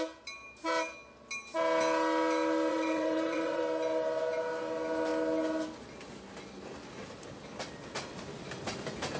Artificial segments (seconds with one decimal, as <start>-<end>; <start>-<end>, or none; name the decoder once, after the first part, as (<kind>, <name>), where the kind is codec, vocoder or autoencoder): 2.7-3.6 (vocoder, WaveNeXt)